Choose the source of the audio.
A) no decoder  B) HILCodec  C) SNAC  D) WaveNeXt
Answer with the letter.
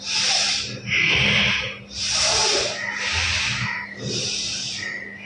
A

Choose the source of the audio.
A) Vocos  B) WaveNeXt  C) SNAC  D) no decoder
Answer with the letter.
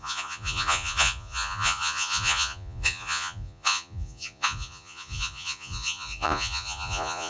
A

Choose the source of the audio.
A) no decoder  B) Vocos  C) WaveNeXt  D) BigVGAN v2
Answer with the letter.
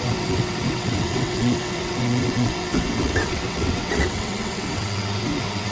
C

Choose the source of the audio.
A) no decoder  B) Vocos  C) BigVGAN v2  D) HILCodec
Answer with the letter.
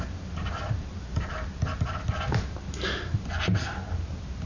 A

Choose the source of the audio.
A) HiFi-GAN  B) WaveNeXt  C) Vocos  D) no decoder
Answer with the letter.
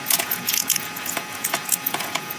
C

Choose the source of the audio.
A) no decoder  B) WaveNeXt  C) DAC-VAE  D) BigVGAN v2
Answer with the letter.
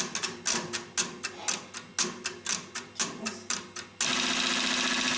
A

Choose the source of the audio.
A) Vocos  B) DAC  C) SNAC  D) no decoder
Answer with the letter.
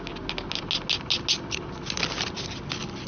D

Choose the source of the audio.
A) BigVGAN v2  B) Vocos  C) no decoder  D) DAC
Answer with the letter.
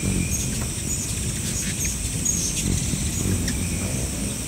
C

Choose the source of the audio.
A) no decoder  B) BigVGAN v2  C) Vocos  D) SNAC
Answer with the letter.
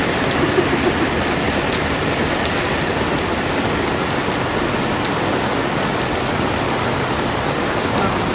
A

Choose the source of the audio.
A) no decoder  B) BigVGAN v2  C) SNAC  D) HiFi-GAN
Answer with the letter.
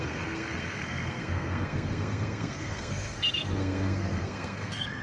C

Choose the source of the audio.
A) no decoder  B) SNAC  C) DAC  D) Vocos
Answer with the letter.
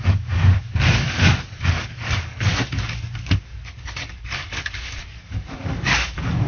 C